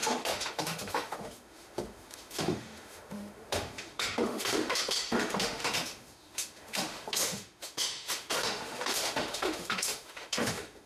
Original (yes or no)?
no